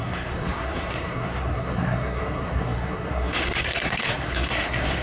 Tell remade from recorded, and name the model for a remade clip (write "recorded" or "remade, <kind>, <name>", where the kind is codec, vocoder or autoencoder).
remade, codec, SNAC